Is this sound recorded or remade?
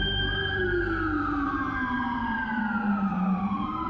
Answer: remade